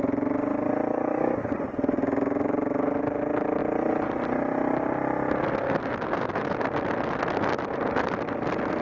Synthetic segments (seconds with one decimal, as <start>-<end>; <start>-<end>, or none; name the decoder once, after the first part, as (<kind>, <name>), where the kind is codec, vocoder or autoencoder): 0.9-1.6 (codec, DAC)